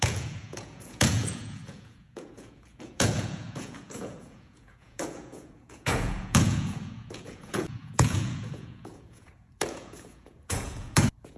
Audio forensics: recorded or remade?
remade